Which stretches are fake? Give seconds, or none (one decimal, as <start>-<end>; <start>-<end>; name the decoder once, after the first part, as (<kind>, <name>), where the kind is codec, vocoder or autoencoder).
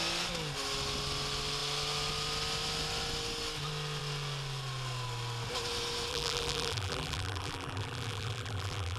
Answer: 6.1-9.0 (vocoder, BigVGAN v2)